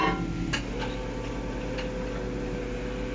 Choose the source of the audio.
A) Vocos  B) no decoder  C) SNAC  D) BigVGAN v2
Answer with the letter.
B